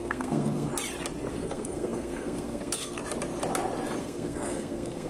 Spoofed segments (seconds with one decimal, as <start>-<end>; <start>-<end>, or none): 0.0-0.7; 1.3-3.0; 4.0-5.1